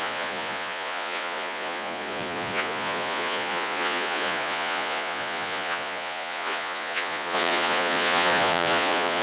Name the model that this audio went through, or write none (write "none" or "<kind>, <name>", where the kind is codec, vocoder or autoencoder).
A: vocoder, Vocos